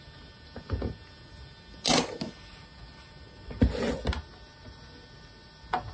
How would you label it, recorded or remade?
recorded